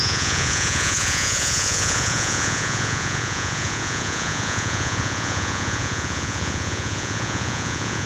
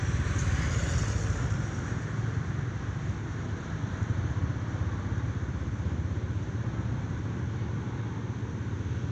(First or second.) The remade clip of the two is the first